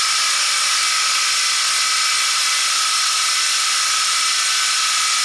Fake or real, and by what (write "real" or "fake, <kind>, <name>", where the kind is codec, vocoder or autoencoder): real